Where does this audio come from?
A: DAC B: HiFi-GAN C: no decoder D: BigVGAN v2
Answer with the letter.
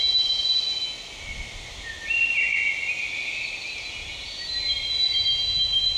C